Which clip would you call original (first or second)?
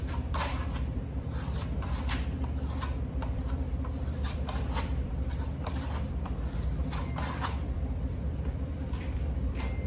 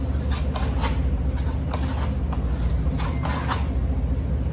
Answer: second